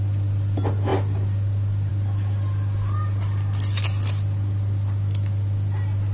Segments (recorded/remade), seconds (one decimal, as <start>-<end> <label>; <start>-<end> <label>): 0.0-6.1 recorded